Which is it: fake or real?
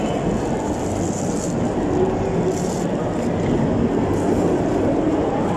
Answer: real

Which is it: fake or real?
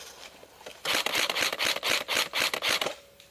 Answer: real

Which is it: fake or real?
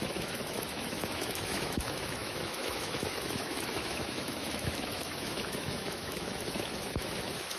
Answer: fake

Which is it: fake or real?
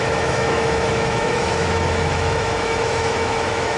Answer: fake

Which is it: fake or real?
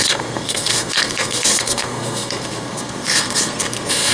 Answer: fake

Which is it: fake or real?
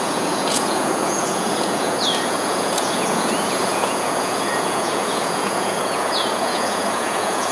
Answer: fake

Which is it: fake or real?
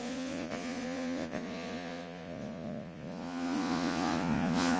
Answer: fake